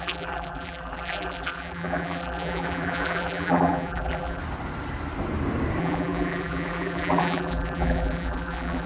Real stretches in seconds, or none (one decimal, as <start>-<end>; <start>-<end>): 4.4-5.8